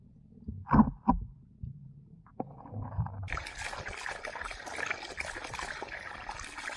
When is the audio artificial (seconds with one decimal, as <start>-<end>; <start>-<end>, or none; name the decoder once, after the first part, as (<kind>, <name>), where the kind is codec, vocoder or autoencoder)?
none